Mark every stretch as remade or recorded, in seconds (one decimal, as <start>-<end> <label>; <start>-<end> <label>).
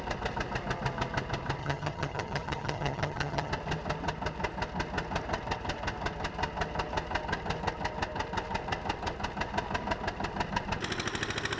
0.0-1.6 recorded; 1.6-3.5 remade; 3.5-11.6 recorded